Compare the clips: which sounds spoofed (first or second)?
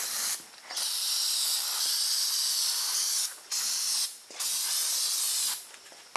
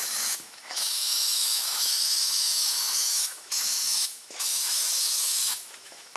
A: second